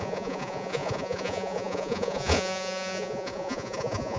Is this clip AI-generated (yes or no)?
yes